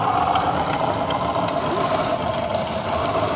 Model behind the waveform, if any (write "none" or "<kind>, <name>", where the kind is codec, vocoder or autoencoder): none